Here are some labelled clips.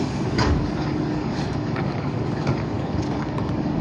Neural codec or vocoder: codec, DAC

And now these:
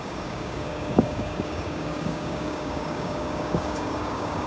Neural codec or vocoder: codec, DAC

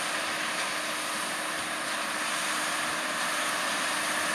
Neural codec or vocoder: none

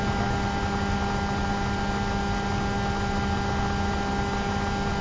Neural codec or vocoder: none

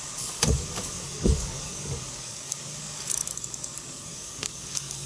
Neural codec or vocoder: codec, DAC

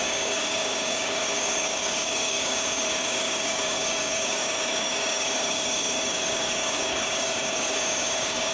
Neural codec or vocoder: codec, DAC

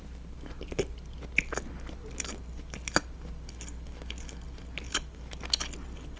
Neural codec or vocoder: none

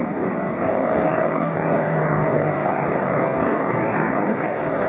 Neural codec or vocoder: codec, DAC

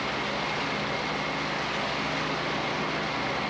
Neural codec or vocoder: none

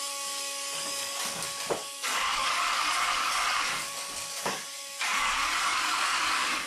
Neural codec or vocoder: codec, DAC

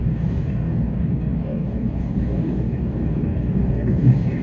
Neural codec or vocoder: codec, DAC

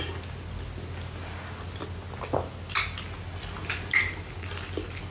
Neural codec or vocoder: none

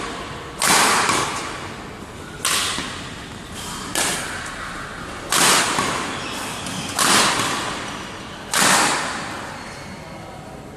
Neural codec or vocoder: none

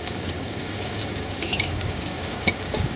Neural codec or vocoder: codec, DAC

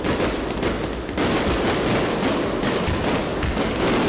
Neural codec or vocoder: none